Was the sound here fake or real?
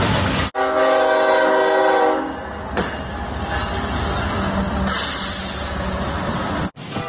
real